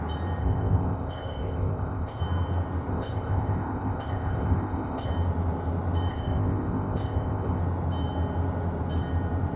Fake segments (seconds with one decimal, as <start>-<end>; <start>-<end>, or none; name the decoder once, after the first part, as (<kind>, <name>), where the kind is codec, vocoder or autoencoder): 0.4-2.2 (codec, ZipCodec); 2.9-5.1; 6.1-7.6